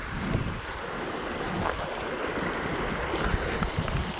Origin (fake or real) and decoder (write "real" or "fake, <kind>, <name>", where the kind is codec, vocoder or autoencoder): real